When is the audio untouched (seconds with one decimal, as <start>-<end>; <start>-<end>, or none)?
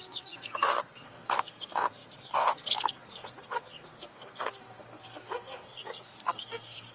none